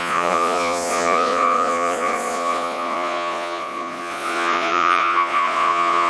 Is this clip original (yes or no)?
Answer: no